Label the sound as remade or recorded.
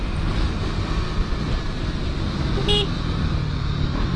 recorded